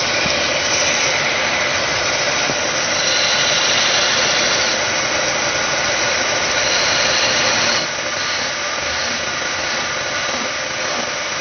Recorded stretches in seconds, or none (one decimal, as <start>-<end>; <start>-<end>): 0.0-11.4